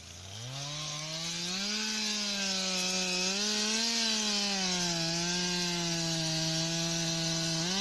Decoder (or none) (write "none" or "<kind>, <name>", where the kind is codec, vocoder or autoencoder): none